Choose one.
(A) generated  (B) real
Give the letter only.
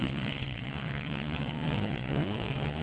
A